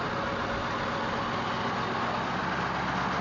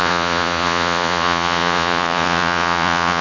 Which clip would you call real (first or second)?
first